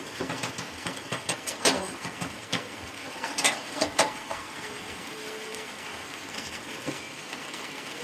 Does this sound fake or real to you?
fake